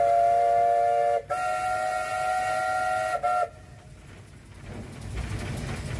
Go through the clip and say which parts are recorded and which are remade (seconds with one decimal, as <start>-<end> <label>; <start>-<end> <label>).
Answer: 0.0-6.0 recorded